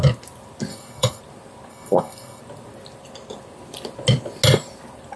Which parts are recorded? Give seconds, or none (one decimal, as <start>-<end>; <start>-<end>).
0.0-0.7; 1.2-1.7; 2.4-5.2